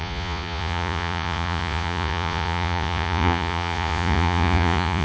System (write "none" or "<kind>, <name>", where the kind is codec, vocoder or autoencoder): vocoder, Vocos